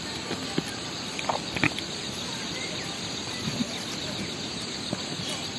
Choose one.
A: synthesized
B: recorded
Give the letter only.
A